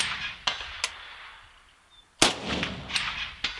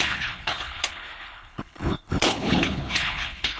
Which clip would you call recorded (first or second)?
first